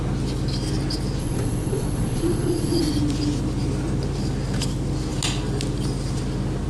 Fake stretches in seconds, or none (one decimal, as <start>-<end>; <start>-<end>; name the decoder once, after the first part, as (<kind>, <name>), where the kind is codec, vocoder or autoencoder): 1.2-2.9 (vocoder, Vocos)